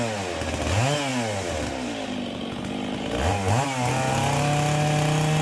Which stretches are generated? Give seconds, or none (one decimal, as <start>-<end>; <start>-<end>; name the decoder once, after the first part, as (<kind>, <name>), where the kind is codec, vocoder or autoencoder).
none